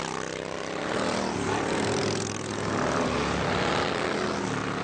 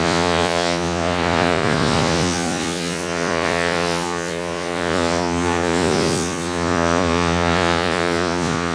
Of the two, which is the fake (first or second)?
second